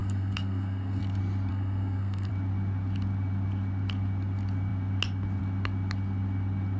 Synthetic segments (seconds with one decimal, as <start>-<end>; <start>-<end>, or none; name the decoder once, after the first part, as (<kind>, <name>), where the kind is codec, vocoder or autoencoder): 0.0-1.0 (codec, SNAC); 1.5-2.3